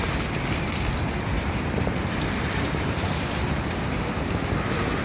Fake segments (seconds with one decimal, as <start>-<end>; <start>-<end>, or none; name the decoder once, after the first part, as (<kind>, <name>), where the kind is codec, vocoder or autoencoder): 1.3-4.3 (vocoder, BigVGAN v2)